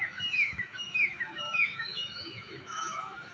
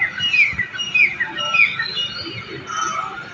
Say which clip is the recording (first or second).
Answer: second